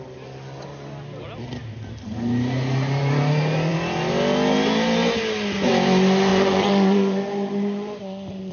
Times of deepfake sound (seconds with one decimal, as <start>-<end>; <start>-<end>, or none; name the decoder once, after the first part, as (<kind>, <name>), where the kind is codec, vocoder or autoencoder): 6.3-8.5 (vocoder, BigVGAN v2)